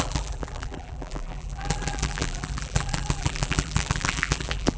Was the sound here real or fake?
fake